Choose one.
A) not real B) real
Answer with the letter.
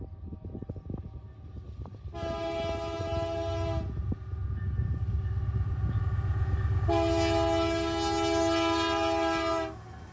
B